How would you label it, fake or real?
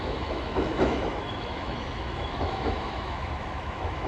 fake